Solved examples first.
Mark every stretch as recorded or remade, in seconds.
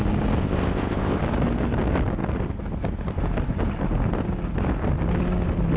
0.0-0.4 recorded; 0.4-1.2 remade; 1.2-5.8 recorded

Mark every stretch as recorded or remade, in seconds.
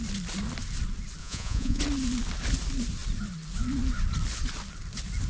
0.0-1.2 recorded; 1.2-1.8 remade; 1.8-5.3 recorded